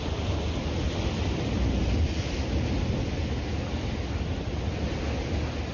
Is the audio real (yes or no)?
yes